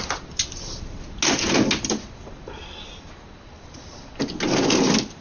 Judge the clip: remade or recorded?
recorded